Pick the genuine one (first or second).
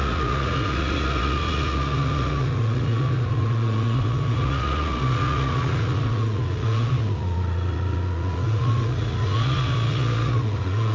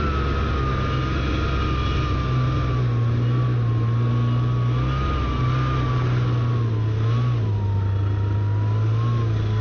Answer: second